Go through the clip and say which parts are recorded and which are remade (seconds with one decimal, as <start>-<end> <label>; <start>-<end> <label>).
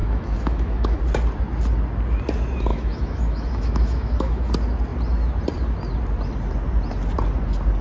0.0-1.0 remade; 1.0-2.7 recorded; 2.7-4.5 remade; 4.5-7.8 recorded